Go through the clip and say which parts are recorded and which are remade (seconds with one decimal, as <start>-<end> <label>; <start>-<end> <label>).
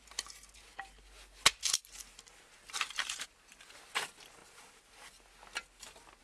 0.0-6.2 recorded